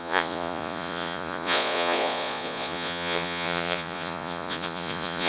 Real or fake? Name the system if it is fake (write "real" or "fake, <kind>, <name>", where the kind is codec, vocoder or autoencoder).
fake, vocoder, Vocos